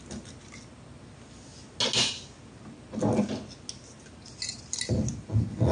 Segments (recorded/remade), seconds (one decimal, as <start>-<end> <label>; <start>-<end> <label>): 0.0-5.7 recorded